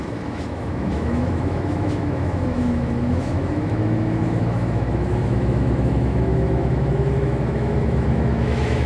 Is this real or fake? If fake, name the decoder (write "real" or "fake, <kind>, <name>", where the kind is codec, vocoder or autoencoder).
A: fake, autoencoder, DAC-VAE